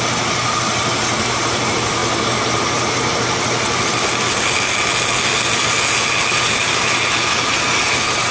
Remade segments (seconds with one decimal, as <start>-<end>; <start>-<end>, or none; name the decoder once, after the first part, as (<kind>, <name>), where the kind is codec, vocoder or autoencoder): none

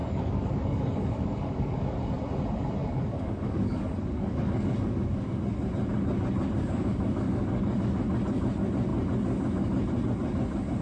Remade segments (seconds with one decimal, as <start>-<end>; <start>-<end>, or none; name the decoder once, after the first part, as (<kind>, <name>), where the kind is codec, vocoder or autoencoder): 0.0-1.8 (codec, DAC); 2.8-5.4; 6.7-8.0